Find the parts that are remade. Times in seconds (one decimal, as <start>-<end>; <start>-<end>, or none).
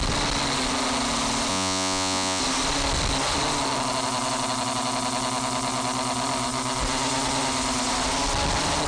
1.5-2.4